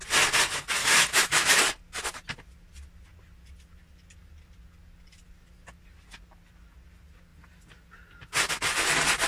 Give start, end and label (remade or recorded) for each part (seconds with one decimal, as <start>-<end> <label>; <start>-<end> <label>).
0.0-0.8 recorded; 0.8-1.6 remade; 1.6-9.3 recorded